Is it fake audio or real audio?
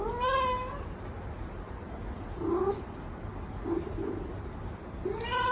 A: real